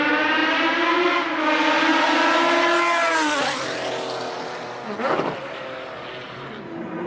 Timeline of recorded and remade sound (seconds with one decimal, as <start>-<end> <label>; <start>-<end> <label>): 0.0-7.1 recorded